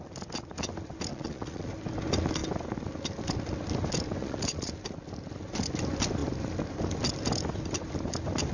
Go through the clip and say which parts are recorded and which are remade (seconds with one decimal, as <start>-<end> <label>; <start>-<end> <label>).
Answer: 0.0-1.1 recorded; 1.1-1.7 remade; 1.7-4.2 recorded; 4.2-4.7 remade; 4.7-8.5 recorded